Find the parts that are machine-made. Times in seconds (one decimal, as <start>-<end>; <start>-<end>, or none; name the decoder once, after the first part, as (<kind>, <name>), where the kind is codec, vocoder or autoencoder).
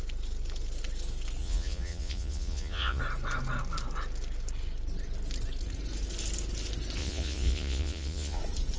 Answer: 1.4-3.0 (vocoder, Vocos); 7.0-8.4